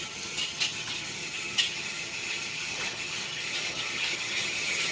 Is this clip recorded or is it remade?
remade